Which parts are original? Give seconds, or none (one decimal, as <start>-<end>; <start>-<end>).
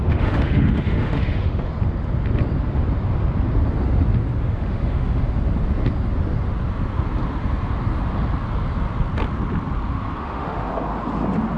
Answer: 1.7-4.4; 5.2-10.2; 10.7-11.6